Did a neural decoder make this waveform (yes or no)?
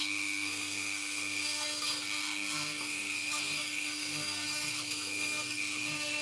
yes